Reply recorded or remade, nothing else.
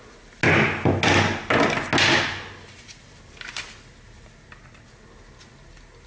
recorded